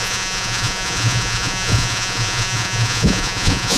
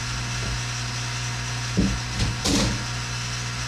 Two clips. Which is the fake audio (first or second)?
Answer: first